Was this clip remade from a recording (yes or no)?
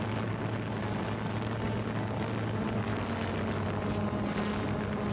no